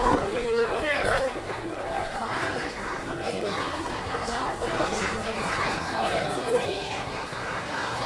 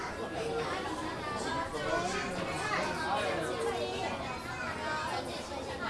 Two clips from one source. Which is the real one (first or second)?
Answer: second